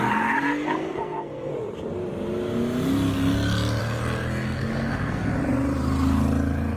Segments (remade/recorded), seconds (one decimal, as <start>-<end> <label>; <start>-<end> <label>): 0.0-1.5 remade; 1.5-3.8 recorded; 3.8-5.2 remade; 5.2-6.8 recorded